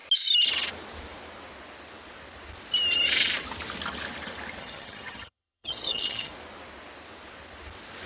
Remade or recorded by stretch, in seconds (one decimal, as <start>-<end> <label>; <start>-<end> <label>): 0.0-4.6 recorded; 4.6-6.3 remade; 6.3-8.1 recorded